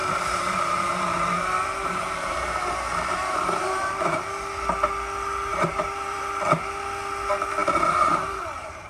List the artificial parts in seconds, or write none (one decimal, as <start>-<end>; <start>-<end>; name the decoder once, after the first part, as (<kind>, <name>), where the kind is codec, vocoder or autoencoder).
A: 0.0-1.0 (vocoder, BigVGAN v2); 1.6-3.8; 5.5-6.2; 7.6-8.9